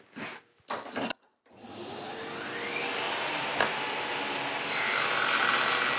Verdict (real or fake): real